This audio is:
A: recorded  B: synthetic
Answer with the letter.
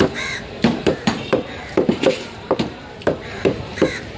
B